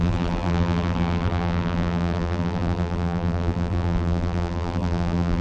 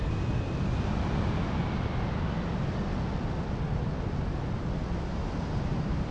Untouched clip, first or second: second